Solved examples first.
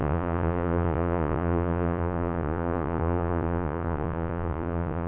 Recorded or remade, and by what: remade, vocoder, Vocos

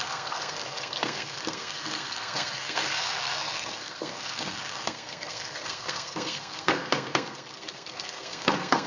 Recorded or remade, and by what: remade, codec, SNAC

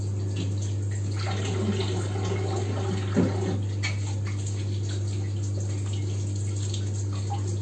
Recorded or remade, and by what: recorded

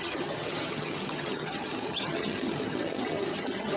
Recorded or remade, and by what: remade, vocoder, HiFi-GAN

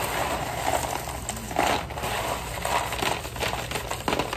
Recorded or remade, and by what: recorded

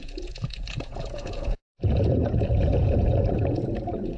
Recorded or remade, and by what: remade, vocoder, Vocos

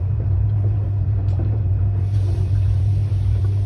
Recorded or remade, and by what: remade, vocoder, BigVGAN v2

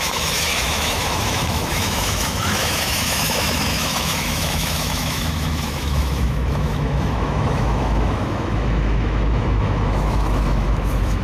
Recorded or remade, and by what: remade, autoencoder, DAC-VAE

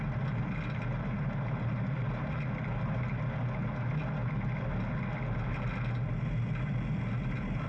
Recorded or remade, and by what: recorded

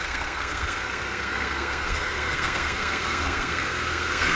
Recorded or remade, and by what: remade, codec, SNAC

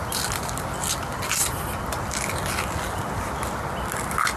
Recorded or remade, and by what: recorded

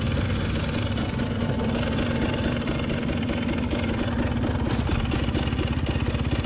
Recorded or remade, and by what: recorded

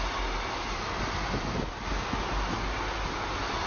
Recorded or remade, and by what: recorded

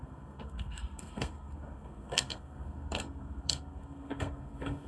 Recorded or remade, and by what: remade, codec, SNAC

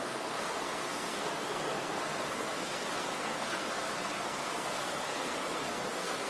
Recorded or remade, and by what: remade, codec, SNAC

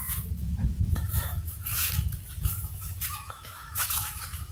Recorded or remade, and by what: remade, autoencoder, DAC-VAE